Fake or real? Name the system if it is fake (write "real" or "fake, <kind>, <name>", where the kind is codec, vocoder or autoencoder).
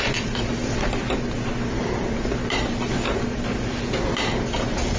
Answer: real